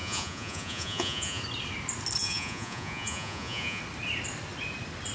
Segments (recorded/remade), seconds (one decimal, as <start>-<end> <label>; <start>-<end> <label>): 0.0-1.4 remade; 1.4-2.2 recorded; 2.2-3.8 remade; 3.8-5.1 recorded